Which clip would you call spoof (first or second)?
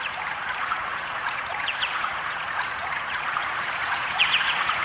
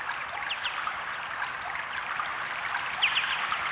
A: first